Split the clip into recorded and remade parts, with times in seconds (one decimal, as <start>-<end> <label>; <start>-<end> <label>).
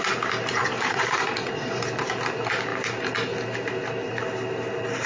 0.0-0.6 recorded; 0.6-1.8 remade; 1.8-5.1 recorded